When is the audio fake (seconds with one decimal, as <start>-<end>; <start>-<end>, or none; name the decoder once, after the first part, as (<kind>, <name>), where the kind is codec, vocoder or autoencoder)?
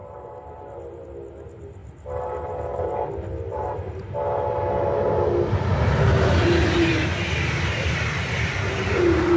0.0-0.6 (vocoder, BigVGAN v2)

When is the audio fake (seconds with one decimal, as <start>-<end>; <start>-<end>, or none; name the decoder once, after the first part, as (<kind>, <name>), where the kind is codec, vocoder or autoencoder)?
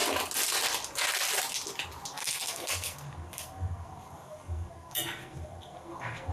2.1-6.3 (codec, SNAC)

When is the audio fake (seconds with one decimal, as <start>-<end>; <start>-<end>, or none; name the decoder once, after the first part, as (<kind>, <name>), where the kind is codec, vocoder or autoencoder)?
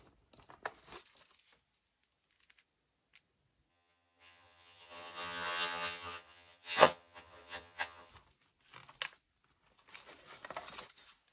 3.7-8.1 (vocoder, HiFi-GAN)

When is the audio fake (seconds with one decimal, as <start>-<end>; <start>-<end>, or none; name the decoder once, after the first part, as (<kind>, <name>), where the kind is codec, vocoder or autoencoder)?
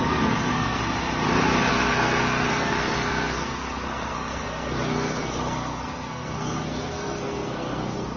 0.0-0.8 (codec, SNAC); 1.7-8.2